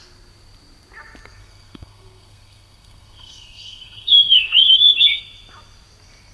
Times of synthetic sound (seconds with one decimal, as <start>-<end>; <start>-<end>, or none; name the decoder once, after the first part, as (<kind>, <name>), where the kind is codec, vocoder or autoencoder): 1.4-5.2 (codec, SNAC)